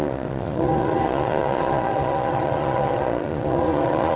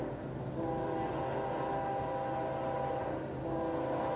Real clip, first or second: second